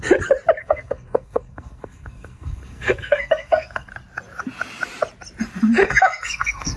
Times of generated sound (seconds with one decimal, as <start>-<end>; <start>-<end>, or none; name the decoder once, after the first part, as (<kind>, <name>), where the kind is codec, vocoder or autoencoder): 0.6-3.9 (codec, SNAC); 5.8-6.8